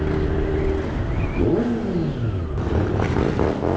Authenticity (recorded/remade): recorded